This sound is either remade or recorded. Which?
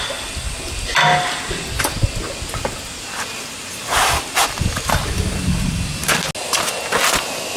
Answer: recorded